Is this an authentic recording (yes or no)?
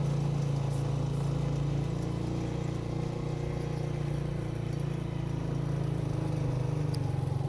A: yes